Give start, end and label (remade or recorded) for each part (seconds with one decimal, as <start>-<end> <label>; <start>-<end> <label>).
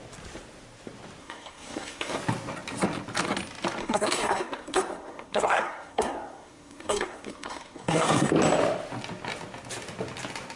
0.0-1.2 recorded; 1.2-2.2 remade; 2.2-3.8 recorded; 3.8-8.3 remade; 8.3-10.6 recorded